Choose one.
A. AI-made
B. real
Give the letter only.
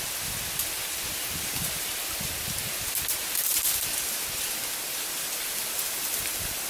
B